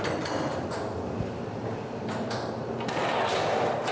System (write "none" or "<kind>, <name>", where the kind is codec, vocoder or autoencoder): none